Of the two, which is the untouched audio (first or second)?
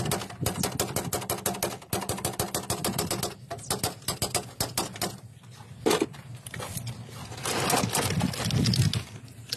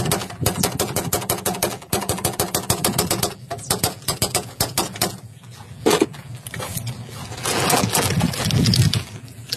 first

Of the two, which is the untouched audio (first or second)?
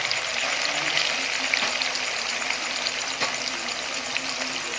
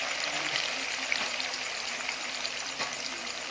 first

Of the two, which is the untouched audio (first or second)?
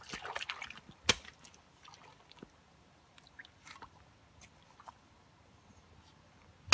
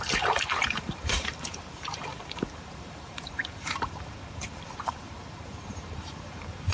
first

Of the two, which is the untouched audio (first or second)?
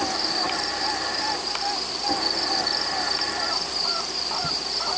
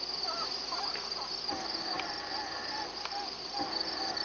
second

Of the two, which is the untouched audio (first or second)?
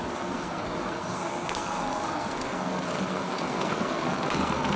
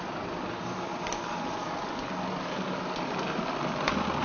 second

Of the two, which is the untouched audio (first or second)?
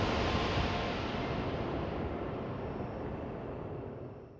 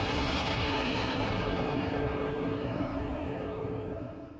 first